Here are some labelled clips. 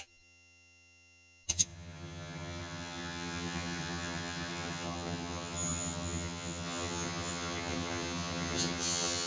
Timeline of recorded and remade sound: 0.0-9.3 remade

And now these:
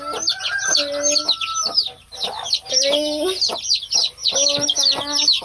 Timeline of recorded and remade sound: 0.0-5.4 recorded

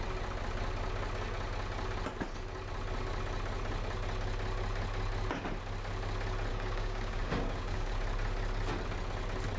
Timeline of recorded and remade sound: 0.0-6.5 recorded; 6.5-7.9 remade; 7.9-9.6 recorded

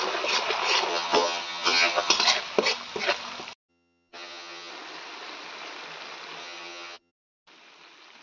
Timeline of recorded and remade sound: 0.0-0.9 recorded; 0.9-2.1 remade; 2.1-3.7 recorded; 3.7-4.7 remade; 4.7-6.4 recorded; 6.4-7.1 remade; 7.1-8.2 recorded

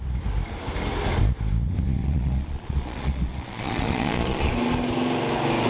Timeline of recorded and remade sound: 0.0-2.0 recorded; 2.0-4.5 remade; 4.5-5.7 recorded

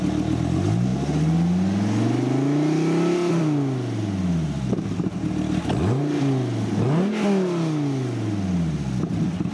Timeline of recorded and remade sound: 0.0-9.5 recorded

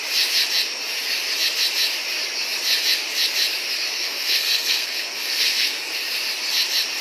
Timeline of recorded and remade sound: 0.0-3.9 recorded; 3.9-6.0 remade; 6.0-7.0 recorded